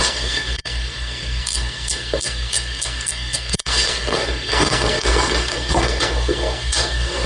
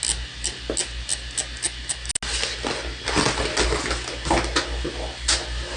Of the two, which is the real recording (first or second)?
second